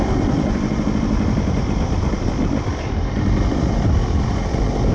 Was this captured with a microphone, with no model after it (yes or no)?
no